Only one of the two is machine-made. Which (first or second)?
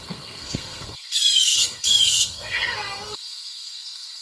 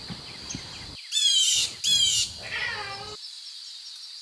first